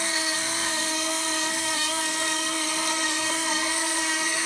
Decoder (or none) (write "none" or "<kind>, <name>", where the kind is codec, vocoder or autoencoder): codec, SNAC